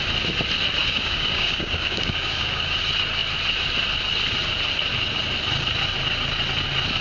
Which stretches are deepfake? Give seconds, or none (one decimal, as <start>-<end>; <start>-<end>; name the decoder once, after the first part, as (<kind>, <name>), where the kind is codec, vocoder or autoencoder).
0.8-2.8 (codec, DAC)